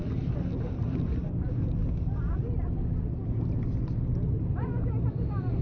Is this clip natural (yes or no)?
yes